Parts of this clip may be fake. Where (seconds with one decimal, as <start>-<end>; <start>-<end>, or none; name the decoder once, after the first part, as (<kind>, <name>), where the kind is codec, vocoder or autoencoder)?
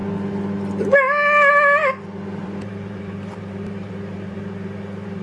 2.4-5.2 (vocoder, BigVGAN v2)